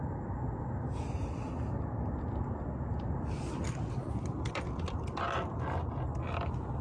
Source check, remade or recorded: recorded